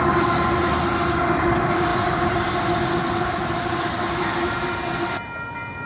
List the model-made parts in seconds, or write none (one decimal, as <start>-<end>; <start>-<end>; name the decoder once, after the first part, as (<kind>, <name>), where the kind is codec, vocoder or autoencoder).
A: none